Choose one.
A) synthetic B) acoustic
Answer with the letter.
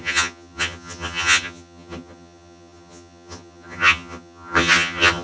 A